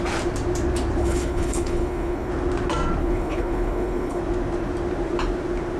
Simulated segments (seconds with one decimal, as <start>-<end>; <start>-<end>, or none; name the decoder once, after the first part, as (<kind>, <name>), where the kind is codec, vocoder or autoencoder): 1.0-2.3 (codec, HILCodec); 3.0-4.2